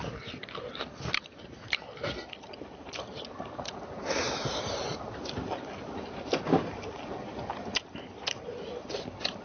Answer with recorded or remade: remade